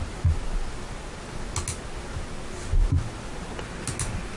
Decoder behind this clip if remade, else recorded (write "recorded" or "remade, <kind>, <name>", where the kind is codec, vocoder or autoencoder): recorded